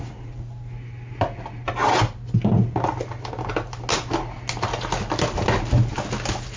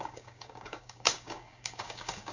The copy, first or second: second